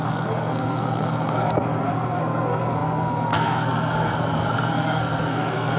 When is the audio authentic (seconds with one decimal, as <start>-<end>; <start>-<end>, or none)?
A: none